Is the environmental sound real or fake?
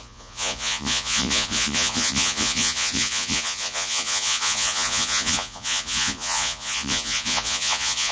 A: fake